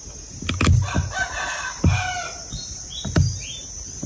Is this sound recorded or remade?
recorded